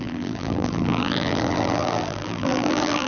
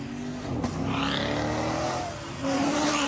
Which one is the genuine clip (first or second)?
second